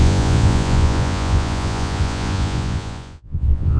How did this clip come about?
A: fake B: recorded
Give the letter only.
A